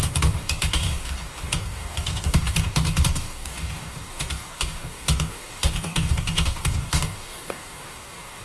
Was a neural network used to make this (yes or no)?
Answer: yes